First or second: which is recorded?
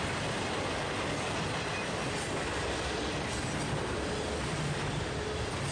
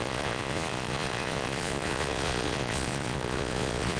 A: first